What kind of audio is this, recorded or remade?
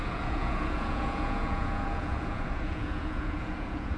remade